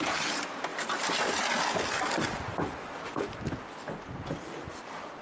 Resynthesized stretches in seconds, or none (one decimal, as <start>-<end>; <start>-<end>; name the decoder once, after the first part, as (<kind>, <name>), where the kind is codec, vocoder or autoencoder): 0.7-1.6 (vocoder, BigVGAN v2)